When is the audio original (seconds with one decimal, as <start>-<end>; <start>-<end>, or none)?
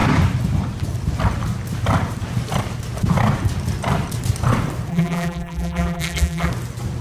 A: 0.0-4.9; 6.5-7.0